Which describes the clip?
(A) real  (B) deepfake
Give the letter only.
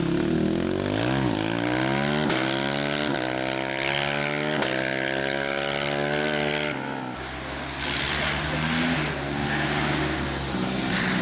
A